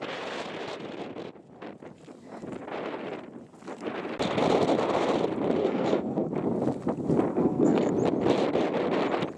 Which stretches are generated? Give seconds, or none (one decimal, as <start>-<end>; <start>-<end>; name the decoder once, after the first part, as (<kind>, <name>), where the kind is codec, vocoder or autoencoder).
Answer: 5.6-6.3 (codec, SNAC); 7.3-7.9